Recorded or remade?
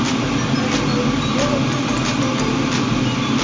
recorded